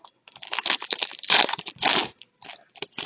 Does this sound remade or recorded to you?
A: recorded